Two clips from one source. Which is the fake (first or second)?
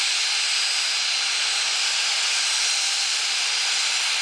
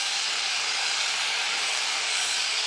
second